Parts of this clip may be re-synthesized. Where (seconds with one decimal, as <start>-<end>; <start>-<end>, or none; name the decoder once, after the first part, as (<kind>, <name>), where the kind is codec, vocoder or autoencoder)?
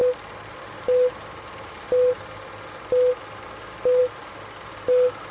none